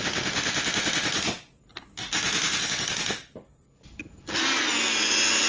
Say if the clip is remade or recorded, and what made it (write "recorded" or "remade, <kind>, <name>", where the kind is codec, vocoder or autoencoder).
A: recorded